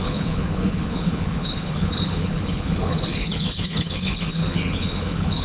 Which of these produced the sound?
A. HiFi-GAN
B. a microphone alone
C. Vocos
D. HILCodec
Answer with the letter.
D